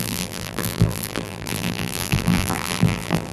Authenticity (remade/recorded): remade